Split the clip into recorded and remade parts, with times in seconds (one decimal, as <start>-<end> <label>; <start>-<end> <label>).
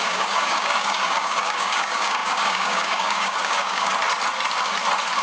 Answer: 0.0-3.9 remade; 3.9-5.2 recorded